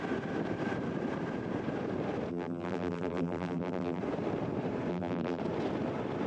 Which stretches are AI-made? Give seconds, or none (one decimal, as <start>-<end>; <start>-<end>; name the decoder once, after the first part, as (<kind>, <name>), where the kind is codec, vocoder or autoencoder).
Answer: 2.3-4.0 (vocoder, BigVGAN v2); 4.9-5.4